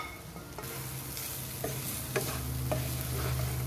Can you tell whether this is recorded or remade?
recorded